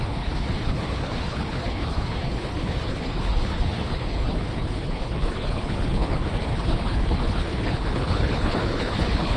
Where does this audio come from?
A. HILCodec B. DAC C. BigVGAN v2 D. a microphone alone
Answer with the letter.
A